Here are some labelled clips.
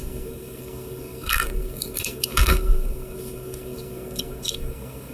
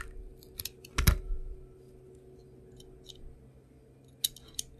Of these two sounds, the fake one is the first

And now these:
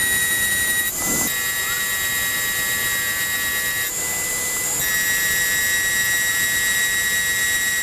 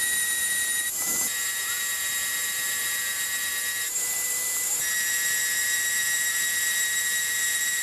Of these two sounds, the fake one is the second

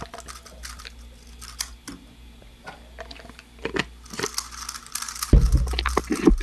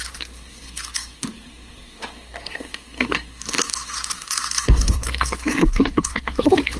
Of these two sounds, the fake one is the second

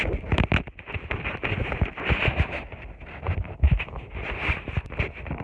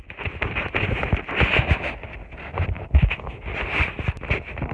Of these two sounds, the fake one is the first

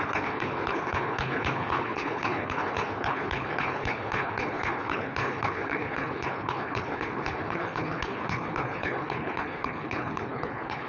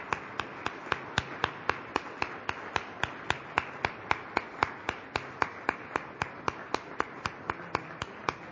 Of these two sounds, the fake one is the first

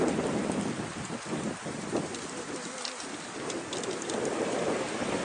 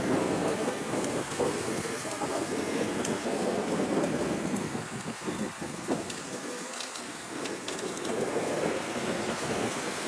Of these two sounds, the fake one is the second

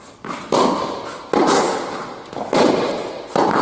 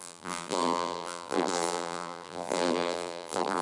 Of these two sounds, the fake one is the second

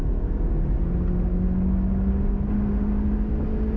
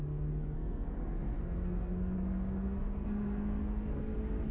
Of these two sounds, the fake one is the second